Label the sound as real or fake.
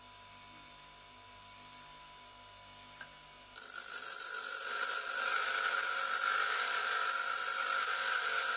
real